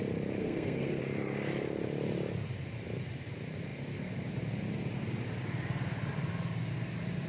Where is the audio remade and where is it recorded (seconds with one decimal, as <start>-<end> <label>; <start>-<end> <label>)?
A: 0.0-0.4 recorded; 0.4-1.0 remade; 1.0-7.3 recorded